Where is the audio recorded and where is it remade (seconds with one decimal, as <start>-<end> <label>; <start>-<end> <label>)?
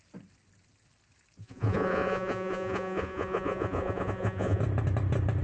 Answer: 0.0-1.4 recorded; 1.4-4.6 remade; 4.6-5.4 recorded